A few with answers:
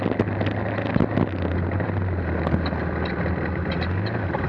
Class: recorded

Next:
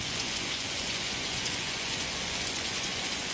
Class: remade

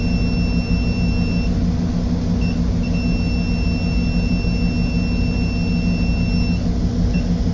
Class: recorded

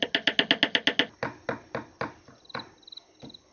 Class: recorded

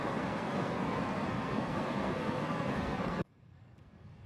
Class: remade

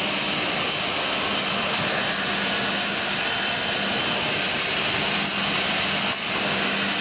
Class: recorded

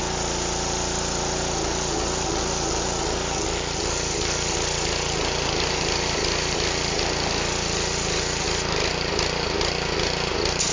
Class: recorded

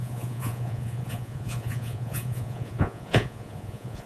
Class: remade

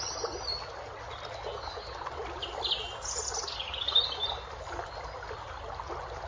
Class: recorded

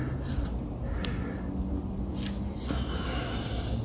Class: recorded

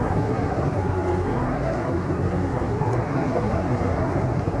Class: remade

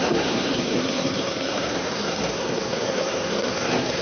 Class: remade